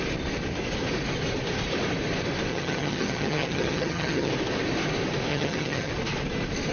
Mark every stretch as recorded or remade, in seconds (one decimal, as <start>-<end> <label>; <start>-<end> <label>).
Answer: 0.0-2.5 recorded; 2.5-4.3 remade; 4.3-5.3 recorded; 5.3-5.9 remade; 5.9-6.7 recorded